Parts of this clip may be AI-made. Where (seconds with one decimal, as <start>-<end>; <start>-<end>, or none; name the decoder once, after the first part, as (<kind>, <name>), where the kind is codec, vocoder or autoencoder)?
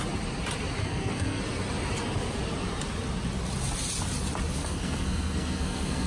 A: 0.8-1.4 (codec, SNAC); 4.6-6.1